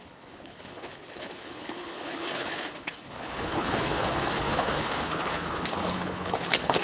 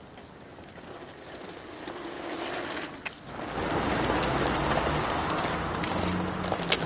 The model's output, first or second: first